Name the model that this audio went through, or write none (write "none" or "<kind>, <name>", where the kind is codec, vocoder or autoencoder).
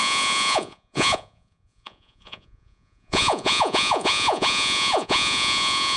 vocoder, Vocos